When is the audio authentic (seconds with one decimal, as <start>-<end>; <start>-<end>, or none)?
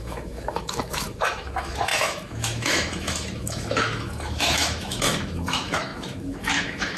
none